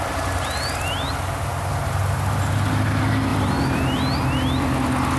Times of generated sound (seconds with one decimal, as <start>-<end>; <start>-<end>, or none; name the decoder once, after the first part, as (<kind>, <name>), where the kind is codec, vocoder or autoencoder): none